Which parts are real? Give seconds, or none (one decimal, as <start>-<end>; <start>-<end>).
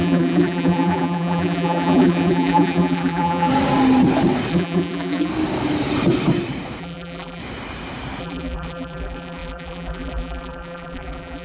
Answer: 3.5-4.5; 5.3-6.8; 7.4-8.2